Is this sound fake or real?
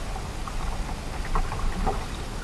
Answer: real